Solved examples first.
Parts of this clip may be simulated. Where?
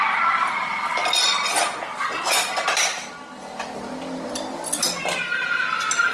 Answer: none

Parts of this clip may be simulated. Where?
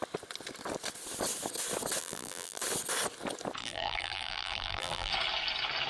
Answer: 2.0-2.6 (vocoder, BigVGAN v2); 3.6-5.1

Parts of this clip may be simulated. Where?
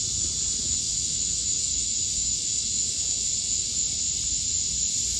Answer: 0.6-3.7 (autoencoder, DAC-VAE)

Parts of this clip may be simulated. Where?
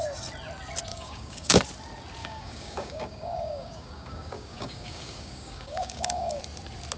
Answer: 0.9-1.6 (codec, DAC); 2.2-6.4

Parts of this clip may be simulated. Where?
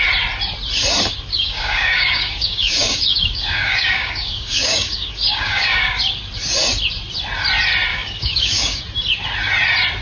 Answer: 1.3-6.0 (codec, DAC); 7.9-8.8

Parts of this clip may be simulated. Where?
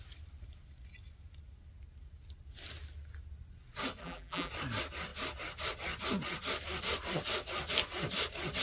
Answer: 4.0-4.5 (vocoder, BigVGAN v2)